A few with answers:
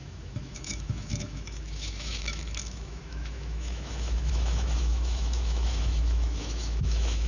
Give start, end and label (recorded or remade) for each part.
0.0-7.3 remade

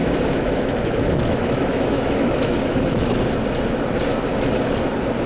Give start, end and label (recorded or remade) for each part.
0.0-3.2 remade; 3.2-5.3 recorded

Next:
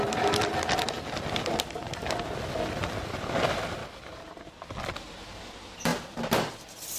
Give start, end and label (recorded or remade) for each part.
0.0-7.0 recorded

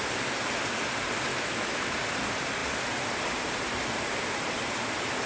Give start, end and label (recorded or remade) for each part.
0.0-1.3 recorded; 1.3-1.9 remade; 1.9-5.3 recorded

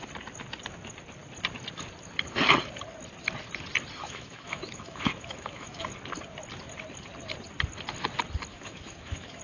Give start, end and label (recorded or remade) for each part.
0.0-4.0 recorded; 4.0-5.9 remade; 5.9-8.5 recorded; 8.5-9.4 remade

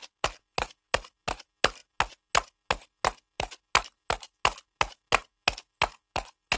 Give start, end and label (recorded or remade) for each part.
0.0-6.6 recorded

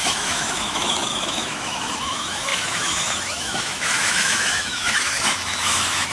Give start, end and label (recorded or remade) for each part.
0.0-6.1 remade